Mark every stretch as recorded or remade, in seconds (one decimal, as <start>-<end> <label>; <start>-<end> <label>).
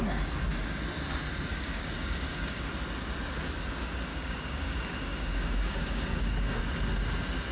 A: 0.0-1.5 recorded; 1.5-2.7 remade; 2.7-4.1 recorded; 4.1-6.6 remade; 6.6-7.5 recorded